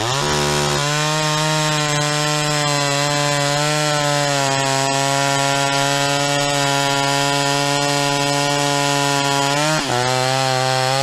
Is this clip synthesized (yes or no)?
no